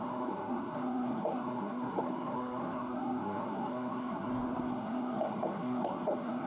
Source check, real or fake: fake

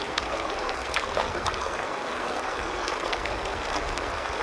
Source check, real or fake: fake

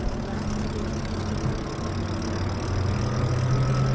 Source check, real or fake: real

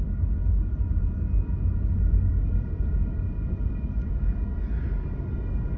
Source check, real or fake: real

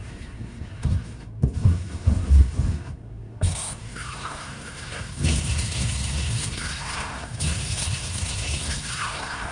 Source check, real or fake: fake